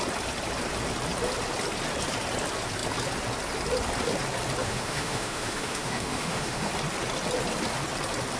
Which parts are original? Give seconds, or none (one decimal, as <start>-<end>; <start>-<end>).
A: 0.0-4.6; 6.7-8.4